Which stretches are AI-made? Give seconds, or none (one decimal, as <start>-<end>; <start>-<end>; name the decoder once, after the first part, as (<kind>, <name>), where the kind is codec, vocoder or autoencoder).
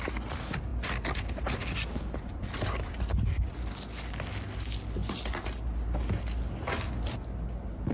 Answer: none